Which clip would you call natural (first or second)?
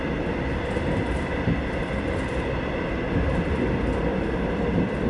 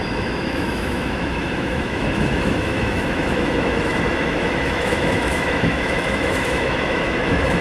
first